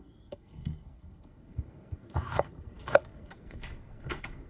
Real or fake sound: fake